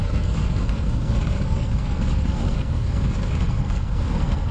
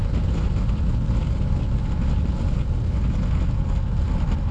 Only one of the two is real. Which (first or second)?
second